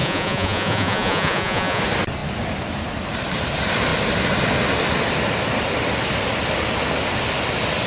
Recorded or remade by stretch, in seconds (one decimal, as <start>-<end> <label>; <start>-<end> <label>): 0.0-1.8 remade; 1.8-7.9 recorded